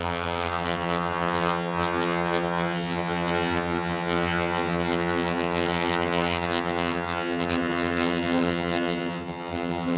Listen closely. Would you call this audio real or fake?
fake